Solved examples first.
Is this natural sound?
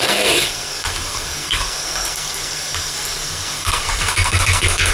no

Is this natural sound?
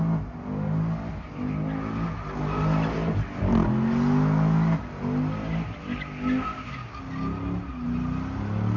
yes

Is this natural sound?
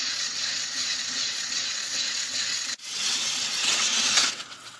no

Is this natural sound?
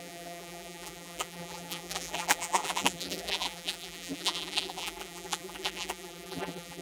no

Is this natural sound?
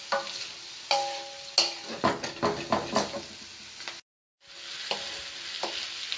yes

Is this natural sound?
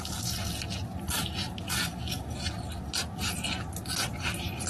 yes